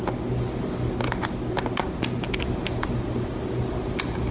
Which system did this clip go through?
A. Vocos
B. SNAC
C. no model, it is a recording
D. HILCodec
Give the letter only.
C